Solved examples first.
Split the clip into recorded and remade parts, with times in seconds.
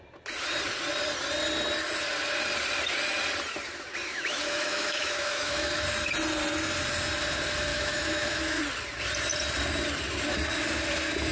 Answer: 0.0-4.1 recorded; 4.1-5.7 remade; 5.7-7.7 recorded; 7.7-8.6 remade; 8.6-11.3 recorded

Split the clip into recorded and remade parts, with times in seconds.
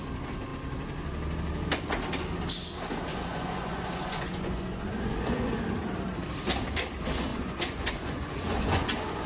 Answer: 0.0-3.1 recorded; 3.1-5.5 remade; 5.5-7.3 recorded; 7.3-9.3 remade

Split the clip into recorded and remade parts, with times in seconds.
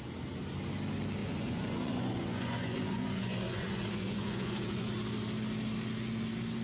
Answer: 0.0-1.2 recorded; 1.2-4.9 remade; 4.9-6.6 recorded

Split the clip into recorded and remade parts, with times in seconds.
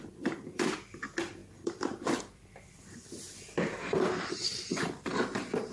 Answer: 0.0-5.1 remade; 5.1-5.7 recorded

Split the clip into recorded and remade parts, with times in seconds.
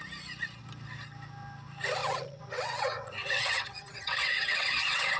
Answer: 0.0-2.0 recorded; 2.0-5.2 remade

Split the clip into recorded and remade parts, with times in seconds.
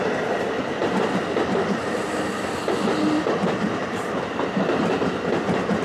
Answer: 0.0-3.8 recorded; 3.8-4.5 remade; 4.5-5.8 recorded